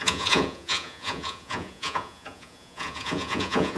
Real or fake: fake